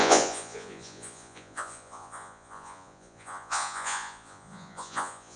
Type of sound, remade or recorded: remade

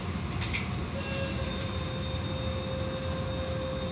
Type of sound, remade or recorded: recorded